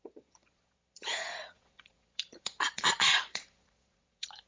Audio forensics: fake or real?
fake